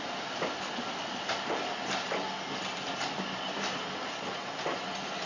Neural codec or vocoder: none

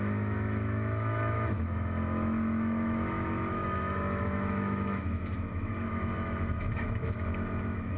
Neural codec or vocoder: autoencoder, DAC-VAE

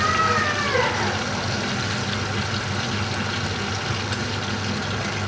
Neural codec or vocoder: none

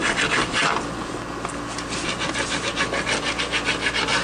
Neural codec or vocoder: none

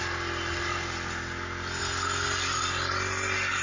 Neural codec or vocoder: none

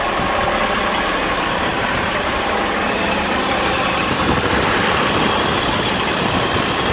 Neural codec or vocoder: vocoder, BigVGAN v2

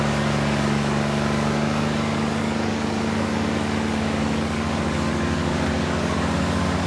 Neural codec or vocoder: codec, DAC